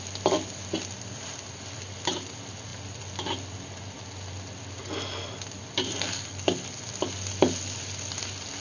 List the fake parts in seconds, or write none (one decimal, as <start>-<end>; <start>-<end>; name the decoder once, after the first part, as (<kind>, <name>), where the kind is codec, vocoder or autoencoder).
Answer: none